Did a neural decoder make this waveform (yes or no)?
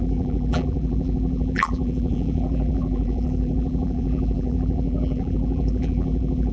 yes